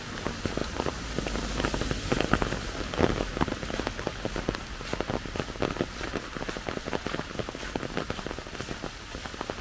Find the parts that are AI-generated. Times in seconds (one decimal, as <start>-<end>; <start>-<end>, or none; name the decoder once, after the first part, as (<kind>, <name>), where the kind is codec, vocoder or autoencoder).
none